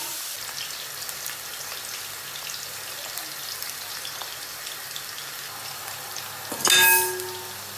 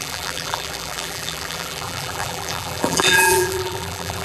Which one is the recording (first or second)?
first